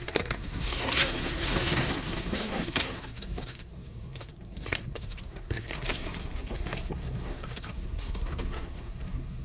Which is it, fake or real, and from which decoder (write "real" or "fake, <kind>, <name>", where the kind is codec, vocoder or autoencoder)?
fake, codec, SNAC